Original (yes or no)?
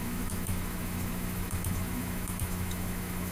no